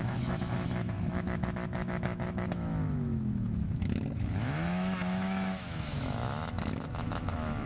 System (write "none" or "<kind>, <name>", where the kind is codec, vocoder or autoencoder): autoencoder, DAC-VAE